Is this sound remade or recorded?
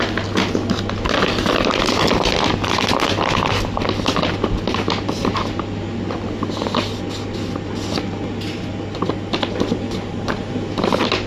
recorded